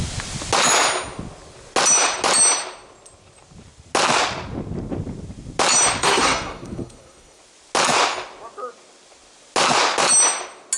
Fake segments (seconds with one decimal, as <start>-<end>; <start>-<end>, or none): 6.0-7.4